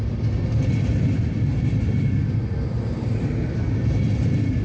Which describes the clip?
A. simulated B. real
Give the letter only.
B